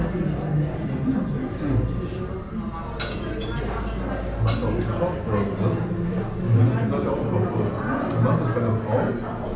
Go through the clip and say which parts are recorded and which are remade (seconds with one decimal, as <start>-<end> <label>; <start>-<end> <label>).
0.0-9.6 recorded